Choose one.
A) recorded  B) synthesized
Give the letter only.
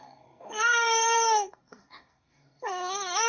B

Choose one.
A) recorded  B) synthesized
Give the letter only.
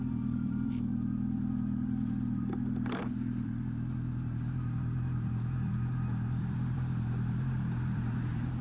B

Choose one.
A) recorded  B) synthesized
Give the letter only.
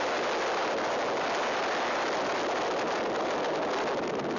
A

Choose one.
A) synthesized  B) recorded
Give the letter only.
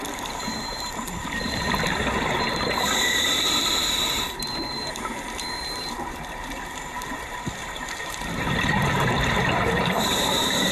A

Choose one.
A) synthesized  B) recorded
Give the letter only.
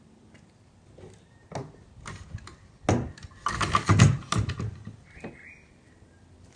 B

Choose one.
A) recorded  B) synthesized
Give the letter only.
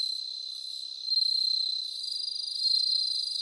A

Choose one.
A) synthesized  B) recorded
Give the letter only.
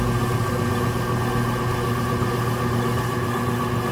B